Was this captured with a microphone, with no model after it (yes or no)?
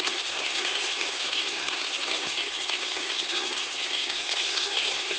no